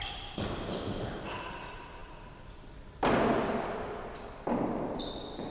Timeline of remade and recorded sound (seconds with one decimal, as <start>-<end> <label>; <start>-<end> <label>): 0.0-5.5 remade